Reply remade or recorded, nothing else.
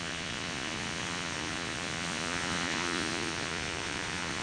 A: remade